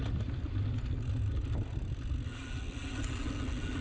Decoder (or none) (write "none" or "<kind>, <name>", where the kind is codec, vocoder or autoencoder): none